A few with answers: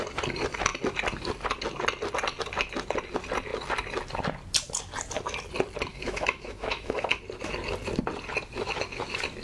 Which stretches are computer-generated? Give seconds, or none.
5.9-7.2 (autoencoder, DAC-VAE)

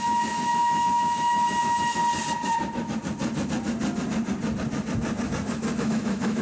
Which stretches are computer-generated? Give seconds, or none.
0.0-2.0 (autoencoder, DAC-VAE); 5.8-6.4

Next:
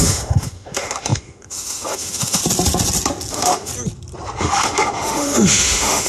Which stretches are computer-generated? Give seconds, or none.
0.0-2.4 (autoencoder, DAC-VAE); 3.3-3.7; 4.4-6.1

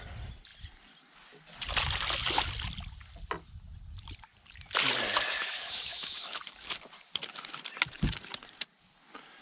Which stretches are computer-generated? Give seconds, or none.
5.4-6.4 (autoencoder, DAC-VAE)

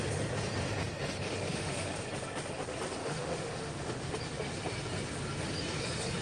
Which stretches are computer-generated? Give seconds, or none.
1.3-1.9 (autoencoder, DAC-VAE); 3.0-4.0

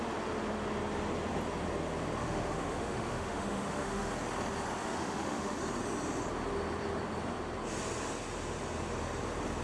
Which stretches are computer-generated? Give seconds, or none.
2.2-4.1 (autoencoder, DAC-VAE); 4.8-5.6

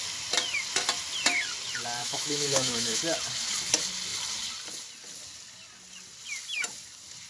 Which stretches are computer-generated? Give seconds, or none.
2.0-3.0 (autoencoder, DAC-VAE)